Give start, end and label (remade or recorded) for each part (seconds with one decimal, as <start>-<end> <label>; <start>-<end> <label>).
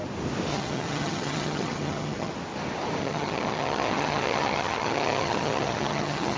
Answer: 0.0-0.5 recorded; 0.5-2.3 remade; 2.3-3.0 recorded; 3.0-6.4 remade